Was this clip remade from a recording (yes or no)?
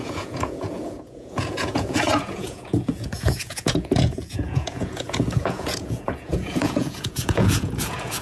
yes